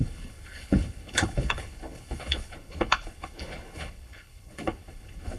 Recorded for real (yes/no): no